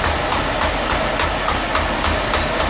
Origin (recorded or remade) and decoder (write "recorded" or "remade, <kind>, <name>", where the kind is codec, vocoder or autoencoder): recorded